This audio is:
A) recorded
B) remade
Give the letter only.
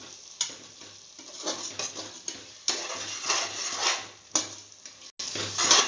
A